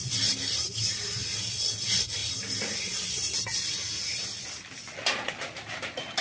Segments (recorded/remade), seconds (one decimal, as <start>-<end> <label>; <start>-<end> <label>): 0.0-6.2 recorded